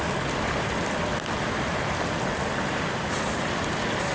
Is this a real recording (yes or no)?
yes